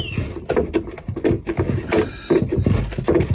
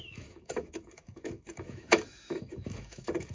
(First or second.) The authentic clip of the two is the first